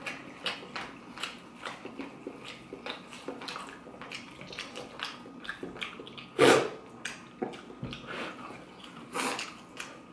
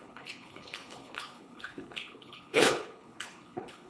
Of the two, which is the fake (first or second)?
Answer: second